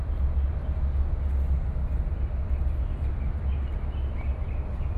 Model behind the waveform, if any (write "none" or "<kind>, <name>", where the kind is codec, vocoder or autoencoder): none